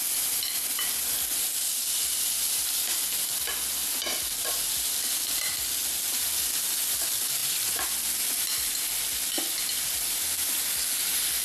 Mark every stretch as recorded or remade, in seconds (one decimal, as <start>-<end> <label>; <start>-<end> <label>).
0.0-11.4 recorded